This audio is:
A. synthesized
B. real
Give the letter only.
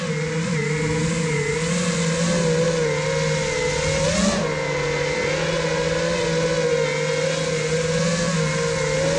B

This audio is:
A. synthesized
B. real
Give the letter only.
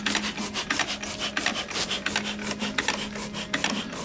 B